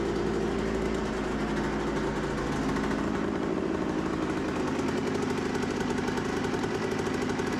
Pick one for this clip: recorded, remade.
recorded